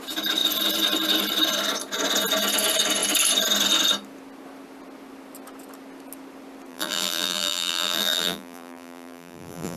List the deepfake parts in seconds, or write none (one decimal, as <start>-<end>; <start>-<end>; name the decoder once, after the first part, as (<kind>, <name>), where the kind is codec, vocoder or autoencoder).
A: 6.7-9.8 (vocoder, BigVGAN v2)